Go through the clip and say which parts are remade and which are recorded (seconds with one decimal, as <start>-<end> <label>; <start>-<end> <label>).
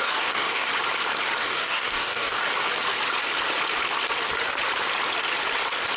0.0-0.7 remade; 0.7-1.4 recorded; 1.4-2.4 remade; 2.4-6.0 recorded